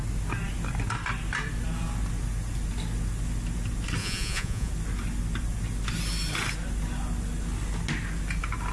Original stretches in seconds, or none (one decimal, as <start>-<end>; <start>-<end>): 0.0-4.0; 4.7-8.7